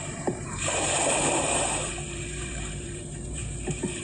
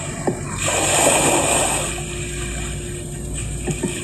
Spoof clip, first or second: first